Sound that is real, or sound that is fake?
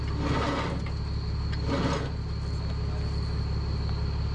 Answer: real